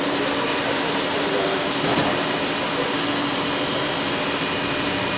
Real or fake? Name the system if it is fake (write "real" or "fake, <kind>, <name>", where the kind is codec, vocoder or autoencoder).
real